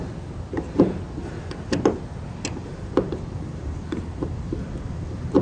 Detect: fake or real real